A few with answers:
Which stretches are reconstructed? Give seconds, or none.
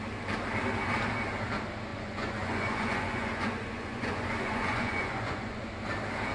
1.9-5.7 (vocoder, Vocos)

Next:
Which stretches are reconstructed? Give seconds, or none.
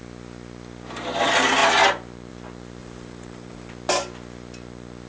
2.8-3.7 (vocoder, BigVGAN v2)